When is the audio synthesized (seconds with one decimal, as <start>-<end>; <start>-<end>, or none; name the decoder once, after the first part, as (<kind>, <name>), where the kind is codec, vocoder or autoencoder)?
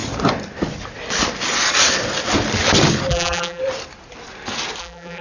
3.1-3.6 (vocoder, BigVGAN v2); 4.8-5.2